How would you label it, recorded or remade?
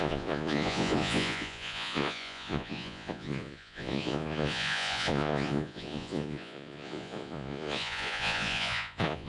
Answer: remade